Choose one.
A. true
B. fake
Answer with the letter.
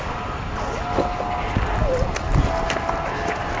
A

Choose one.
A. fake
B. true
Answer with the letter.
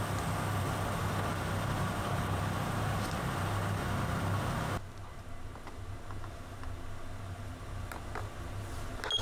B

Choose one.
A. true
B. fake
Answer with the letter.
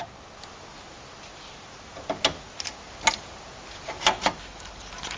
A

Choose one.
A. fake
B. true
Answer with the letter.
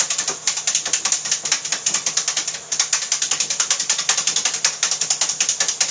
B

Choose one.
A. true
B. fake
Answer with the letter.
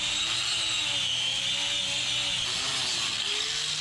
A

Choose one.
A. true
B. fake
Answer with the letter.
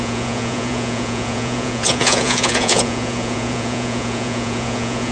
B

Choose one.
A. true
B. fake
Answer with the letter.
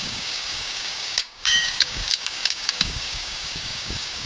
B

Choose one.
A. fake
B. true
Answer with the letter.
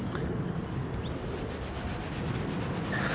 B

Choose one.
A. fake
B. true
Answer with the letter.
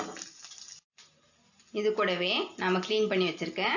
B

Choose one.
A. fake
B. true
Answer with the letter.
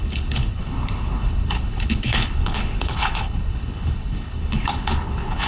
A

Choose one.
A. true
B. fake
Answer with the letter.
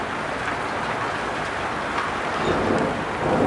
A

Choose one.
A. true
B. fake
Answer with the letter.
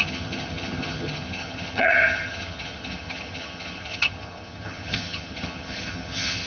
B